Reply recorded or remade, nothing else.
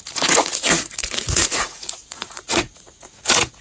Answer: remade